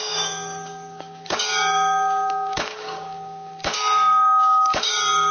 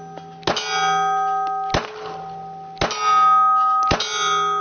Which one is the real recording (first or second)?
second